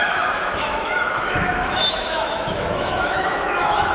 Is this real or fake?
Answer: fake